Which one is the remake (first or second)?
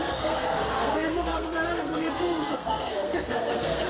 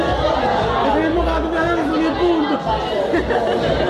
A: first